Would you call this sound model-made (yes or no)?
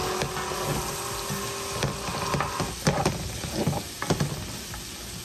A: no